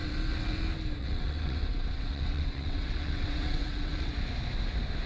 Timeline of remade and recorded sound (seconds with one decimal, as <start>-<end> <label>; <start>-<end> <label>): 0.0-0.6 remade; 0.6-1.0 recorded; 1.0-4.1 remade; 4.1-5.1 recorded

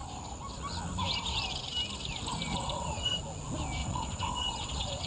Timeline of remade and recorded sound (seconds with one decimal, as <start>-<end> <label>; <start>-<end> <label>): 0.0-2.5 recorded; 2.5-3.2 remade; 3.2-3.8 recorded; 3.8-5.1 remade

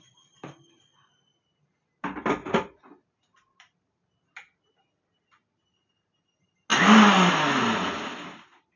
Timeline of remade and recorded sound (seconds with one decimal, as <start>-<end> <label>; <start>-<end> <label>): 0.0-8.8 recorded

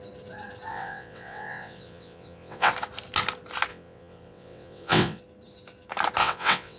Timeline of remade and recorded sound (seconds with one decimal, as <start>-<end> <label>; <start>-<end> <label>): 0.0-0.7 recorded; 0.7-2.7 remade; 2.7-3.7 recorded; 3.7-5.2 remade; 5.2-6.2 recorded; 6.2-6.8 remade